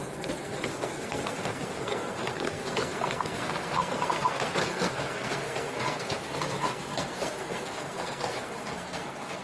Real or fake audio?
fake